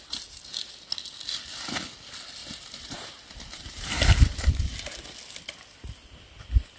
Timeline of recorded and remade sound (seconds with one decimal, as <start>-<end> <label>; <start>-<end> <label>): 0.0-2.4 recorded; 2.4-4.5 remade; 4.5-6.8 recorded